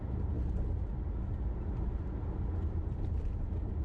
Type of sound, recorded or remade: recorded